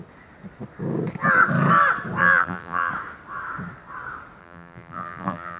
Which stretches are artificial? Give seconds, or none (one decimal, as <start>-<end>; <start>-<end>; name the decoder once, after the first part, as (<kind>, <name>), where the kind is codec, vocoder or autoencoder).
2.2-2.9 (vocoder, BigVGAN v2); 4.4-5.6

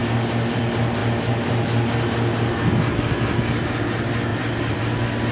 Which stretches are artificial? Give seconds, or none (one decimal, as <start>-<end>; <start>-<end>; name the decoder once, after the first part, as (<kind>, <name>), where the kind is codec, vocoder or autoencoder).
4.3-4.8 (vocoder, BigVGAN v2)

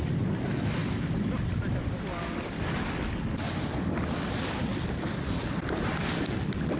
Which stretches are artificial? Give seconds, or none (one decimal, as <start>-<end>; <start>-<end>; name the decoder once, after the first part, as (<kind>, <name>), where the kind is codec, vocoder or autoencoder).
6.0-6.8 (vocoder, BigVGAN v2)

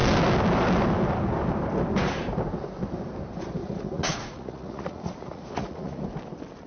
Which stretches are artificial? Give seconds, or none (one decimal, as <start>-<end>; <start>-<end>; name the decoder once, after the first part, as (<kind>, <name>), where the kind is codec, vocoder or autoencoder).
3.6-6.0 (vocoder, Vocos)

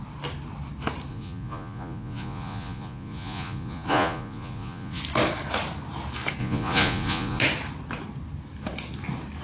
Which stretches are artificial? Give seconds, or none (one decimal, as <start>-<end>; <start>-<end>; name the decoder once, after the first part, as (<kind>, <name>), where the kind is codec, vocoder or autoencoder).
1.1-5.0 (vocoder, Vocos); 6.4-7.4

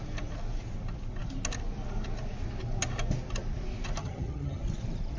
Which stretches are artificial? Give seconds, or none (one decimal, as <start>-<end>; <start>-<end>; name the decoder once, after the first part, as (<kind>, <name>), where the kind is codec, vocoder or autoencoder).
4.0-4.6 (vocoder, HiFi-GAN)

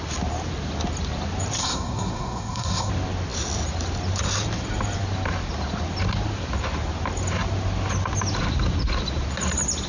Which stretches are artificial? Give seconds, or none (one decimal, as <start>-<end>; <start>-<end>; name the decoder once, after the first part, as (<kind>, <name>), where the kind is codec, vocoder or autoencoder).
1.6-2.9 (codec, SNAC)

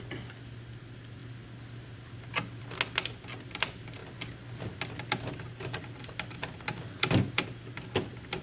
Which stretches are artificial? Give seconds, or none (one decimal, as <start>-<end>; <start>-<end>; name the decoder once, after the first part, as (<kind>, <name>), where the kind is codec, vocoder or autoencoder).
none